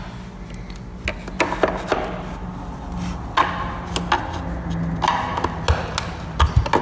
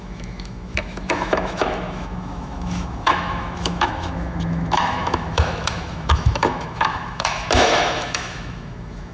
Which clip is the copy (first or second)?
second